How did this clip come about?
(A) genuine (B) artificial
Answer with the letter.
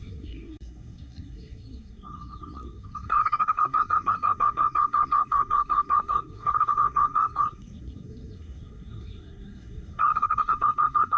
B